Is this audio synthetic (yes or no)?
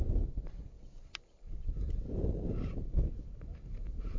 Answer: no